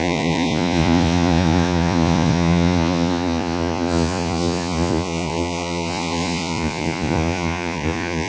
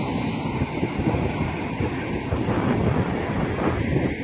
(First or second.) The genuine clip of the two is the second